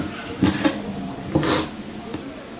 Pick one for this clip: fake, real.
fake